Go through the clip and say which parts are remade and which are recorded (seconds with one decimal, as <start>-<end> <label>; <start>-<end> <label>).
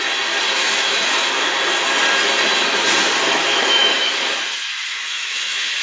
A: 0.0-0.6 recorded; 0.6-1.5 remade; 1.5-3.3 recorded; 3.3-4.2 remade; 4.2-4.9 recorded; 4.9-5.8 remade